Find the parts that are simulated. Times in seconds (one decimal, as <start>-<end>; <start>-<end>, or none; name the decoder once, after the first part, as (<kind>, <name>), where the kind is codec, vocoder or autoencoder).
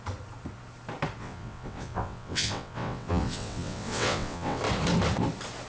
1.2-4.6 (vocoder, WaveNeXt)